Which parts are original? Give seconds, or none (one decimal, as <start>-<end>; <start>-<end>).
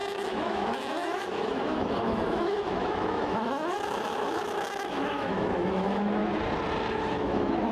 6.2-6.9